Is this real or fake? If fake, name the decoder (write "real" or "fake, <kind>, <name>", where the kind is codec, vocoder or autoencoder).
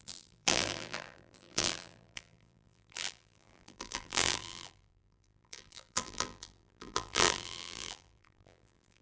fake, vocoder, BigVGAN v2